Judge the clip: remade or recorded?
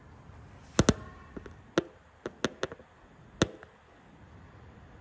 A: recorded